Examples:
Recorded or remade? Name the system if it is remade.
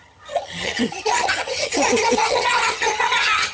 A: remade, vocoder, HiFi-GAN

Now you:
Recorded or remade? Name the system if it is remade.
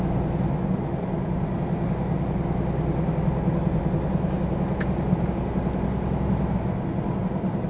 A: recorded